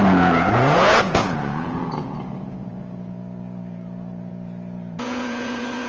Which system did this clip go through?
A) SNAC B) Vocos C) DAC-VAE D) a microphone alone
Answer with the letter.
B